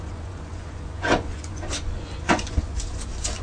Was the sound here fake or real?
fake